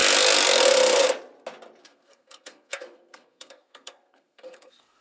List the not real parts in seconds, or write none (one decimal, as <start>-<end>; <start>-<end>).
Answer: 1.8-5.0